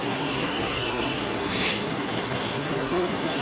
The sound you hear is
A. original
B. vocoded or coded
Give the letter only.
B